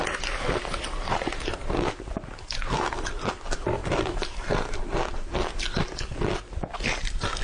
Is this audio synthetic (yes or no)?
no